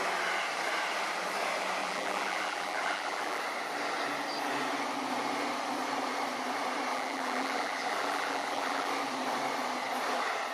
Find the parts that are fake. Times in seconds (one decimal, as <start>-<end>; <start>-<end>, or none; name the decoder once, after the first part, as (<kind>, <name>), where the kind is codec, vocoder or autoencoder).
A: 1.8-3.4 (vocoder, BigVGAN v2); 6.9-8.9